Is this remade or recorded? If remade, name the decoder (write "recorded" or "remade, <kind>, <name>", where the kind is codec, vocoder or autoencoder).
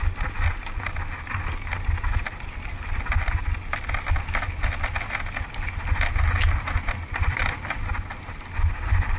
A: recorded